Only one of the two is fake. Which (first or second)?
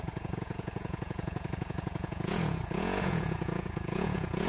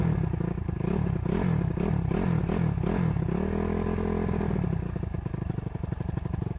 first